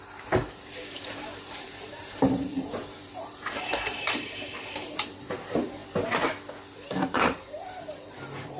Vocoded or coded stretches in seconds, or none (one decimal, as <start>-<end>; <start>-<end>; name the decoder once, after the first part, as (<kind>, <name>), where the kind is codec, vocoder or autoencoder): 0.0-5.8 (vocoder, BigVGAN v2); 6.6-8.6